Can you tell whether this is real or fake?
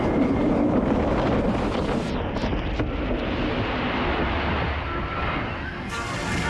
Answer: real